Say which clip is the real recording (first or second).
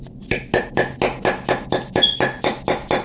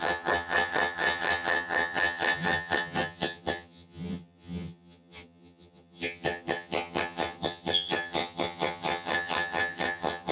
first